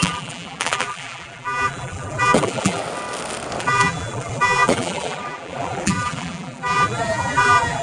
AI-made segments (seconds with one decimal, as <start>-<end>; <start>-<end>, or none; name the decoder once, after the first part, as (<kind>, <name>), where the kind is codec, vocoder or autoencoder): 0.0-2.8 (vocoder, BigVGAN v2); 3.6-7.8